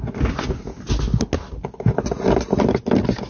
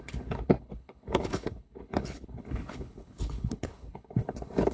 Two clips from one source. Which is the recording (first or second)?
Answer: first